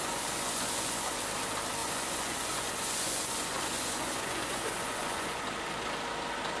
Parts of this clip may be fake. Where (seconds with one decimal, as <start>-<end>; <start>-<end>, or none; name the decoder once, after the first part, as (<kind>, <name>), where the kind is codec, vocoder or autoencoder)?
0.0-1.2 (vocoder, Vocos); 1.8-5.4